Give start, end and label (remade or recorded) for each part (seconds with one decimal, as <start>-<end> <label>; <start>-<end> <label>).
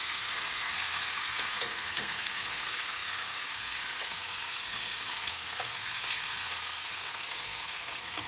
0.0-8.3 remade